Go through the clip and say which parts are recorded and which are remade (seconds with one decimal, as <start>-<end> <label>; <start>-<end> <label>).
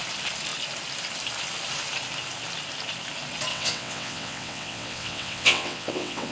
0.0-3.5 recorded; 3.5-6.3 remade